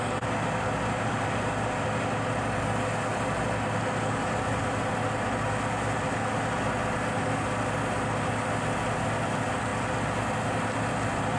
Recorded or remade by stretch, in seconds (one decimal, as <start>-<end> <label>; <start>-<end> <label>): 0.0-11.4 recorded